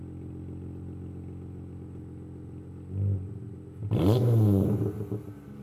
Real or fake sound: real